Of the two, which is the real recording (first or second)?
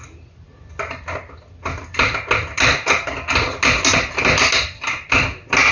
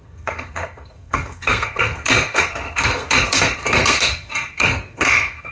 first